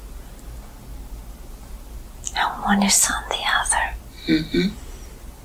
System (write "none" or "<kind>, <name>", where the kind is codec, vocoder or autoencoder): none